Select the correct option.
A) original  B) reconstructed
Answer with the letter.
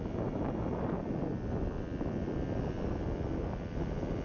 A